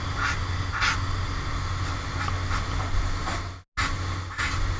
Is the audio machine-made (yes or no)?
no